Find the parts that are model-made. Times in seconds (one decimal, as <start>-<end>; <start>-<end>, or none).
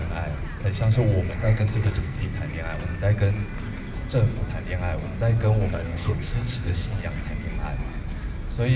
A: 1.3-2.3; 5.7-6.9